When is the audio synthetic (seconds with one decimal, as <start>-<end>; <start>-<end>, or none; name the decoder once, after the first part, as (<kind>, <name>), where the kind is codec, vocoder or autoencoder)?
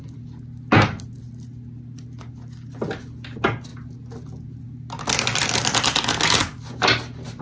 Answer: none